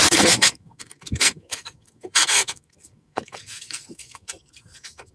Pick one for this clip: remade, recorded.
remade